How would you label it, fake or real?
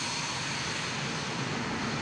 real